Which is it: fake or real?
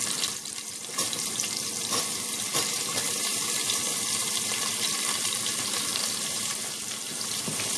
fake